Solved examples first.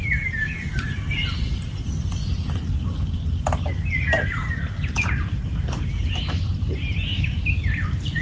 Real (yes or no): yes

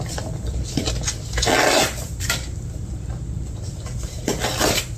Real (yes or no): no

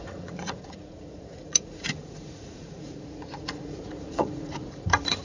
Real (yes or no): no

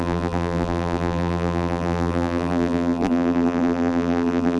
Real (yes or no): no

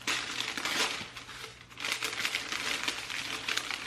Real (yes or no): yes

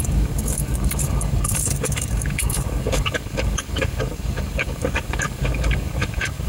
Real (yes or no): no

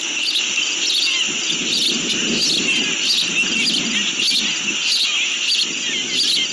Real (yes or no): yes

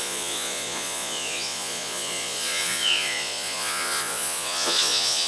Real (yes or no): no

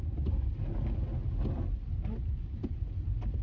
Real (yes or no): yes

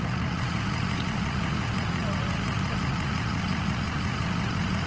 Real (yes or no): no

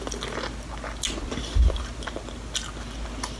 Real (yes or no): yes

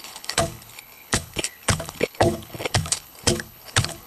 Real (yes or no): no